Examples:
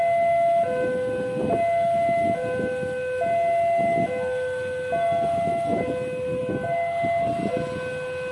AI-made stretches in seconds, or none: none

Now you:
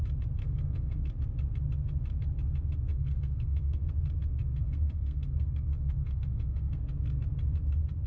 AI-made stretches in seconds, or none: 0.4-1.0 (codec, SNAC); 2.9-3.8; 4.4-6.8

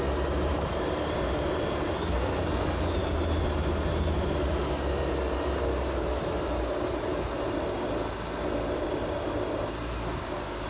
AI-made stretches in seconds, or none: none

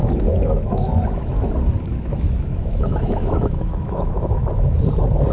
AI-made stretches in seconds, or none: 0.0-1.5 (autoencoder, DAC-VAE); 1.9-4.7

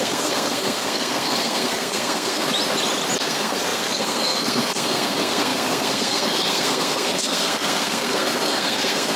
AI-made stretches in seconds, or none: 0.0-2.5 (codec, SNAC); 3.2-9.2

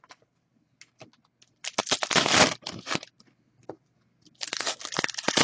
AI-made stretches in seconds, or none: none

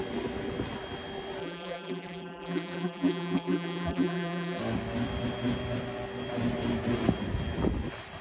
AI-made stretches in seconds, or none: 1.4-4.6 (vocoder, BigVGAN v2)

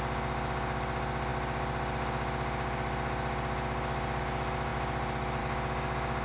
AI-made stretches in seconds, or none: 1.3-4.2 (vocoder, BigVGAN v2); 4.7-5.4